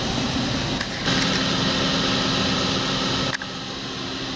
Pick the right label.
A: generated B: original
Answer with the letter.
B